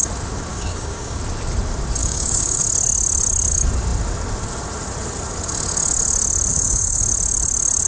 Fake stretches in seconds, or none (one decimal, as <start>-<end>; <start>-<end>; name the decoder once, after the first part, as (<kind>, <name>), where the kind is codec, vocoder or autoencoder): 0.5-1.2 (codec, DAC); 2.0-2.6; 6.5-7.0